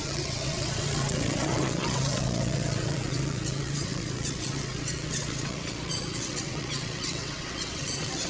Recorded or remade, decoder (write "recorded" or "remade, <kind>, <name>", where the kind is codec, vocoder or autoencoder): remade, vocoder, WaveNeXt